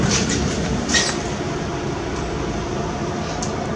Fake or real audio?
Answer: real